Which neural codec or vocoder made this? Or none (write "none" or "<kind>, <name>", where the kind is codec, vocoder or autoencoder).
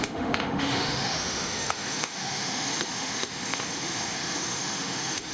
autoencoder, DAC-VAE